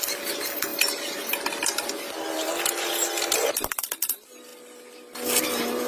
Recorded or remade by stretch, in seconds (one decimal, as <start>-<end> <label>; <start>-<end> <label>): 0.0-5.9 recorded